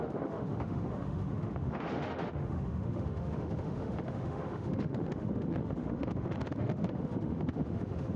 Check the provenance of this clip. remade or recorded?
remade